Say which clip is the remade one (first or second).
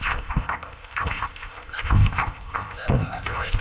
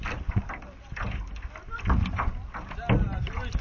first